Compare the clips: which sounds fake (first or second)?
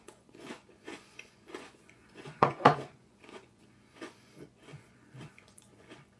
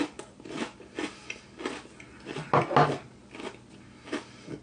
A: first